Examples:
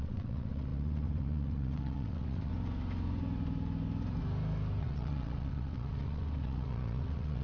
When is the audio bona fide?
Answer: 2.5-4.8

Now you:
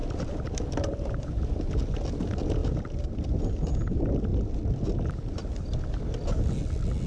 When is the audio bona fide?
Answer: 0.0-7.1

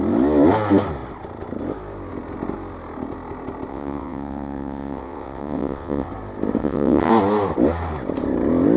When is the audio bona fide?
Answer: 0.0-3.7; 6.1-6.6; 7.1-8.8

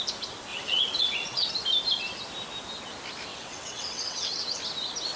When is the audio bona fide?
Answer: 0.0-0.5; 1.5-3.3; 4.6-5.2

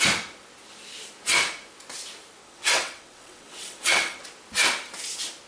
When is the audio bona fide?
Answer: 0.0-2.4; 4.3-5.5

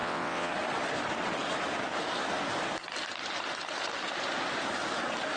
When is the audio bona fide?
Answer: 0.5-5.4